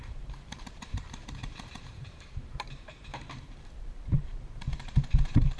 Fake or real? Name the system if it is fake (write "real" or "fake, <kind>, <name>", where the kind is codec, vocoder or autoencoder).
fake, vocoder, BigVGAN v2